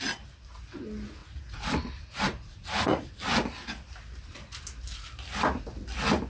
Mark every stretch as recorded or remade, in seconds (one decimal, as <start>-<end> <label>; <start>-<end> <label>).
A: 0.0-1.2 recorded; 1.2-3.1 remade; 3.1-6.3 recorded